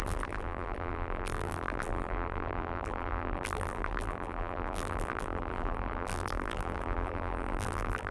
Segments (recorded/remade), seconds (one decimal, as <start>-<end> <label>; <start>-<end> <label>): 0.0-8.1 remade